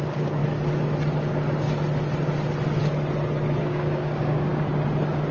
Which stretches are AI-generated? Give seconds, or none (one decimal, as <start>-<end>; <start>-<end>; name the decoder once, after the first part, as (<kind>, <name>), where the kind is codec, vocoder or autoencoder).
0.0-0.4 (codec, DAC); 3.6-4.5